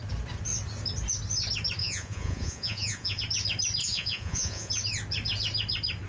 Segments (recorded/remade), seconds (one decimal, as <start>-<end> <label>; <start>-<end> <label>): 0.0-1.8 recorded; 1.8-3.2 remade; 3.2-3.8 recorded; 3.8-4.7 remade; 4.7-6.1 recorded